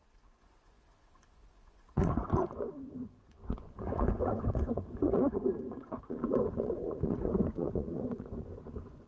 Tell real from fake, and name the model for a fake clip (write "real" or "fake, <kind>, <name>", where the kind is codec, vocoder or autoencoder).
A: fake, vocoder, Vocos